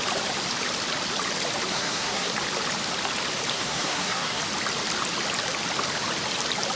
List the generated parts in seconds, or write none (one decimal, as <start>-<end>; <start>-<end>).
1.7-2.3; 3.5-4.4